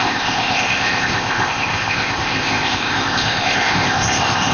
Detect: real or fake fake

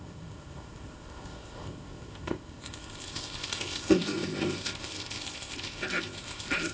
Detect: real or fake fake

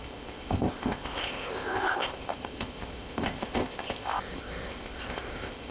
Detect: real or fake fake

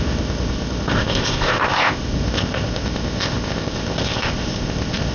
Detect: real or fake fake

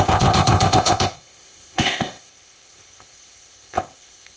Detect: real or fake fake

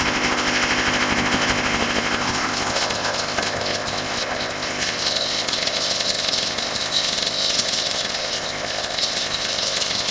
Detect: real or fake fake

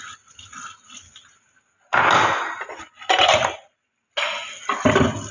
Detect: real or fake real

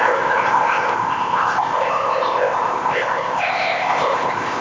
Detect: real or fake fake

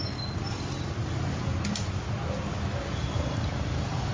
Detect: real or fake real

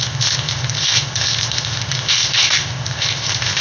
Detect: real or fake fake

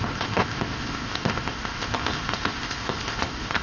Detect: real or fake fake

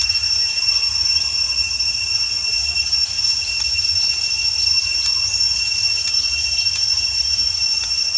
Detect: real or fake real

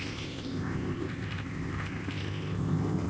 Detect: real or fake fake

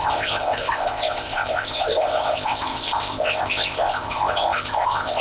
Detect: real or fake fake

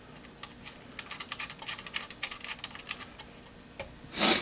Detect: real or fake real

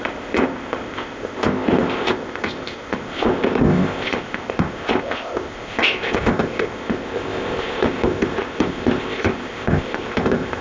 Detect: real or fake fake